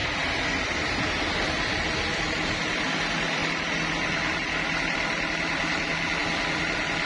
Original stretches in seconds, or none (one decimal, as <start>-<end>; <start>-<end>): 0.0-7.1